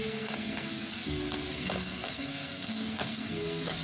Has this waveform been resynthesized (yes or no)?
yes